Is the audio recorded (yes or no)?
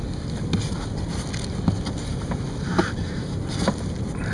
yes